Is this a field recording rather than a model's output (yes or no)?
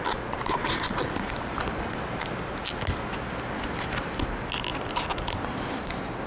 yes